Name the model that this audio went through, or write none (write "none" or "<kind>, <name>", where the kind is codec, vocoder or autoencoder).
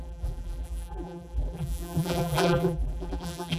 vocoder, BigVGAN v2